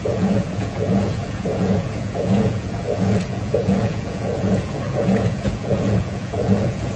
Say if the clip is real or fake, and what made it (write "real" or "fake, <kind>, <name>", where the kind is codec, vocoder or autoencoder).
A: fake, vocoder, Vocos